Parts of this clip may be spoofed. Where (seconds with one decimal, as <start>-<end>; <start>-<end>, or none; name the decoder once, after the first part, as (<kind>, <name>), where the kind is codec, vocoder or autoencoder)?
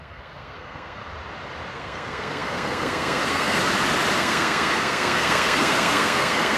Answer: 0.0-1.0 (codec, SNAC); 1.7-3.6; 4.2-6.6